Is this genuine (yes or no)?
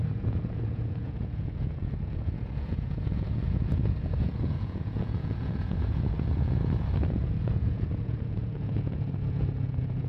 no